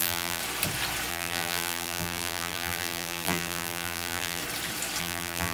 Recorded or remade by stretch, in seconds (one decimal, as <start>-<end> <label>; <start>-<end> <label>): 0.0-0.4 remade; 0.4-1.1 recorded; 1.1-4.4 remade; 4.4-5.0 recorded; 5.0-5.5 remade